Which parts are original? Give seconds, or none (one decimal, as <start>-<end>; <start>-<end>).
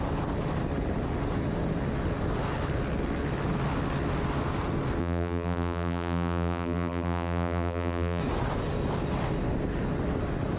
0.0-5.0; 8.2-10.6